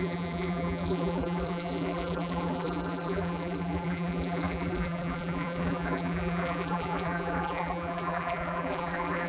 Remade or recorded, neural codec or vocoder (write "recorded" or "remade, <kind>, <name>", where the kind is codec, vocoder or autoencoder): remade, vocoder, BigVGAN v2